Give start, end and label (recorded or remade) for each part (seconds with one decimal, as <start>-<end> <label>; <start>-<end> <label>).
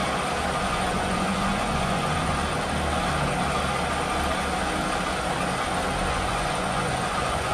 0.0-0.6 recorded; 0.6-2.4 remade; 2.4-6.1 recorded; 6.1-7.5 remade